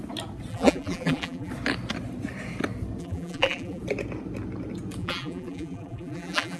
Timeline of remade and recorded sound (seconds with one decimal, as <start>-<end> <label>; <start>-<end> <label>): 0.0-0.5 recorded; 0.5-1.5 remade; 1.5-3.0 recorded; 3.0-3.8 remade; 3.8-5.0 recorded; 5.0-6.6 remade